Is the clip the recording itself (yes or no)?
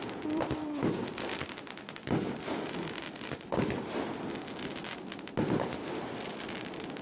no